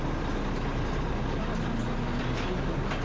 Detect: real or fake real